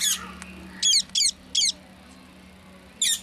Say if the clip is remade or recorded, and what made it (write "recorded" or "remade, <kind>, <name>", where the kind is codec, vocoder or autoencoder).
recorded